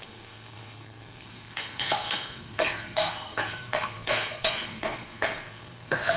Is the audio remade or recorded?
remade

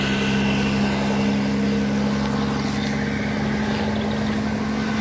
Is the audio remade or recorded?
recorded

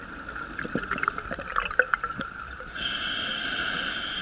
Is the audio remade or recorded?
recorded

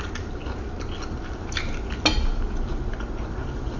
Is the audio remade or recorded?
recorded